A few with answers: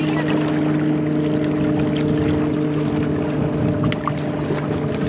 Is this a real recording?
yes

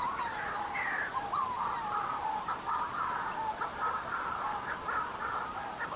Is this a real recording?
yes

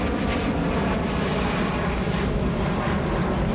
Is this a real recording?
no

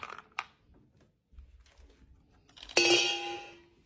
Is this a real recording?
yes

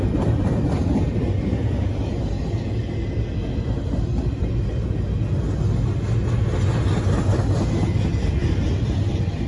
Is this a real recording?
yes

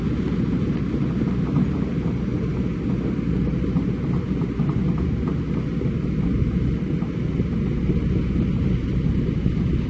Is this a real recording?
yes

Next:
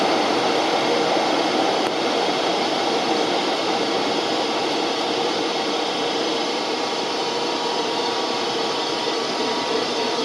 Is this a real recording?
no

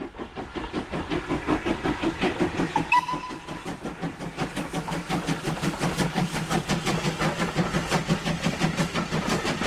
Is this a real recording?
yes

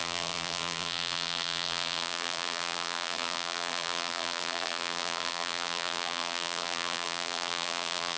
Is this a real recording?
no